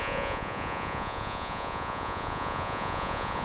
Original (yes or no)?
no